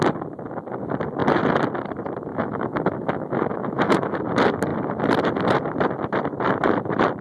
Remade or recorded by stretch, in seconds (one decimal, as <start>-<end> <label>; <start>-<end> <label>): 0.0-2.3 recorded; 2.3-4.2 remade; 4.2-7.2 recorded